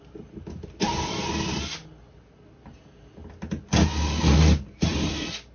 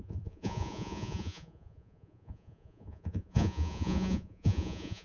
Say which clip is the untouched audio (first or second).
first